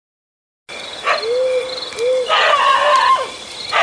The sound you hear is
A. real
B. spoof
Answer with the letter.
A